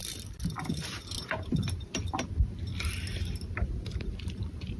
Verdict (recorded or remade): remade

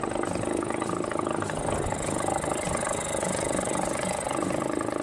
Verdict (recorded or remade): recorded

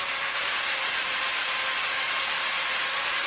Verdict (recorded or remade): remade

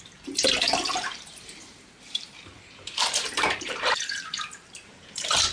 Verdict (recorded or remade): remade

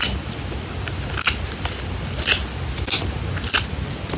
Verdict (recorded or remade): recorded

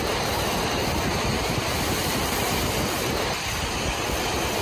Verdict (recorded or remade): recorded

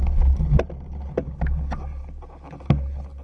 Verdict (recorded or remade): recorded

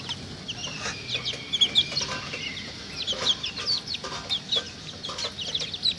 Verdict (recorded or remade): recorded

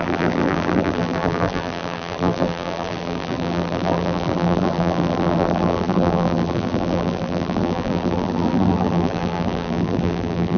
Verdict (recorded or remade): remade